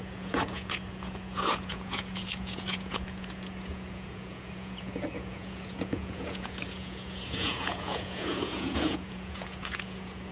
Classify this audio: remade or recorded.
remade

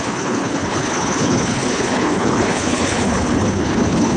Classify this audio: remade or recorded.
remade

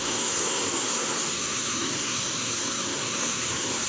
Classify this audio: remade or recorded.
remade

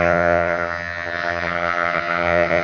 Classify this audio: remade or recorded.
remade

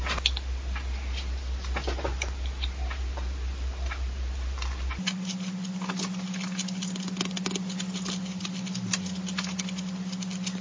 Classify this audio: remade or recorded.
recorded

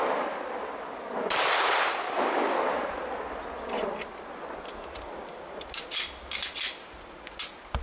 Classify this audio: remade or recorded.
recorded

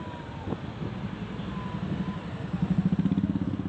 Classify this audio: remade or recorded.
recorded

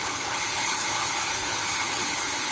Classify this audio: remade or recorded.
remade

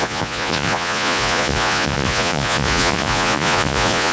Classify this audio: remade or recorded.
remade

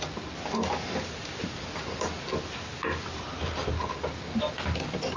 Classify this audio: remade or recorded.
recorded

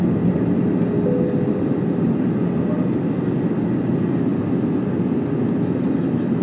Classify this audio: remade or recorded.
recorded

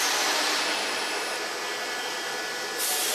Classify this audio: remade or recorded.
recorded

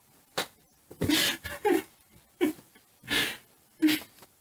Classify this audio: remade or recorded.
recorded